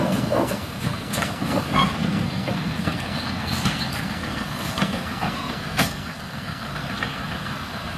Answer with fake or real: fake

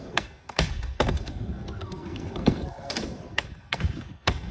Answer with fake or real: fake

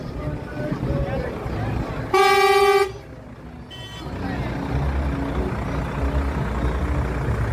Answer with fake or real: real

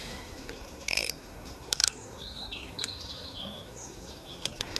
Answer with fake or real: fake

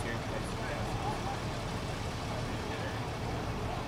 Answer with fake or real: real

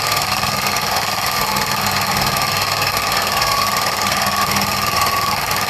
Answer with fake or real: fake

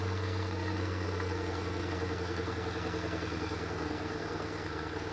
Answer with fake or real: fake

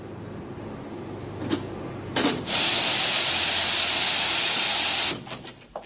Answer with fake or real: real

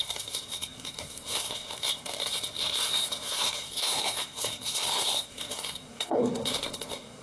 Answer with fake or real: fake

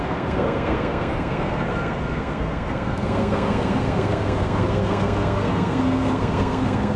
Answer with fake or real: fake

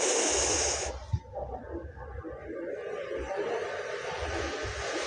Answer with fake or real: real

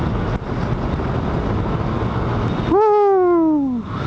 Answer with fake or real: real